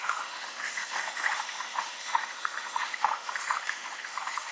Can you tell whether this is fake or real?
fake